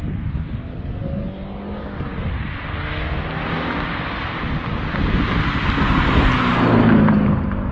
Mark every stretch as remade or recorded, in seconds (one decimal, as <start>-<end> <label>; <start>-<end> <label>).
0.0-7.7 recorded